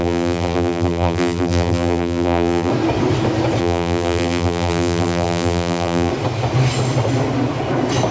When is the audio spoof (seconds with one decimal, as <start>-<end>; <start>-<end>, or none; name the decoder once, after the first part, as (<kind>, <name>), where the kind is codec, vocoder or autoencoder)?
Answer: 0.0-2.7 (vocoder, BigVGAN v2); 3.6-6.1